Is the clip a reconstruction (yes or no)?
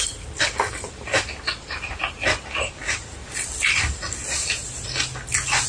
no